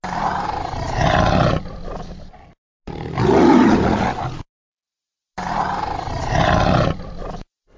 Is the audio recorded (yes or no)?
yes